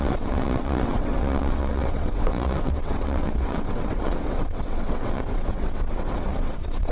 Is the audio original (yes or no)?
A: no